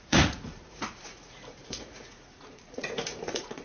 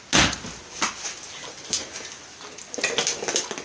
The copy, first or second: first